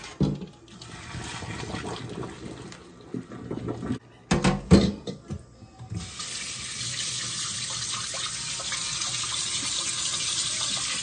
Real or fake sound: real